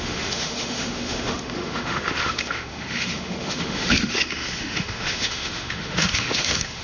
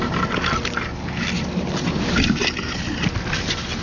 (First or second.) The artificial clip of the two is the first